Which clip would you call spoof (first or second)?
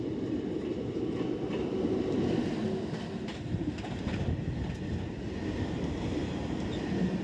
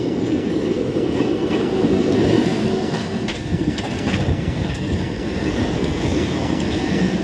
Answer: second